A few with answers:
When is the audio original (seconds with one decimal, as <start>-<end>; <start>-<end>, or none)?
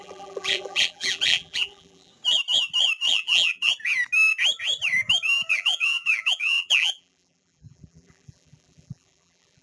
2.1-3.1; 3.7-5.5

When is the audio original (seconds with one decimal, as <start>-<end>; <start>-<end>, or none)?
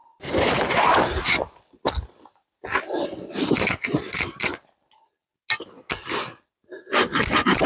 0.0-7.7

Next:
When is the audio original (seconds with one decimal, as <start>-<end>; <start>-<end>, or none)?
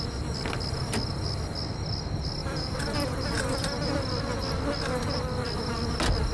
0.0-2.4; 3.9-6.3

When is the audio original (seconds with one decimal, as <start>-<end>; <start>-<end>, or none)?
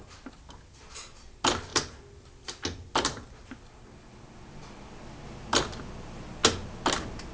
0.0-7.3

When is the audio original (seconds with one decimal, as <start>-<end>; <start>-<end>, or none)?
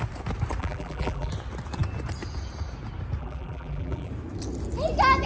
0.0-0.6; 1.3-3.2; 4.1-5.3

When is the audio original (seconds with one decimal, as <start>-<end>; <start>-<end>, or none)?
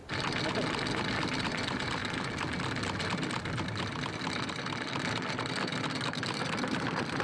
0.0-0.5; 2.0-4.1; 5.7-6.2